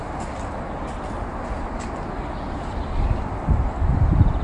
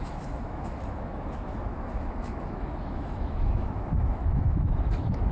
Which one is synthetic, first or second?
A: second